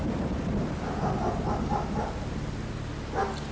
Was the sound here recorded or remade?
recorded